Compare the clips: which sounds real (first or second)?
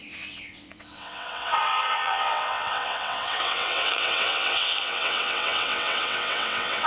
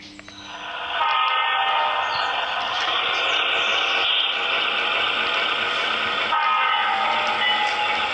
second